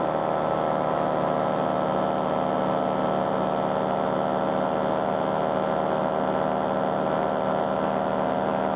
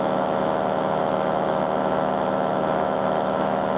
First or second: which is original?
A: first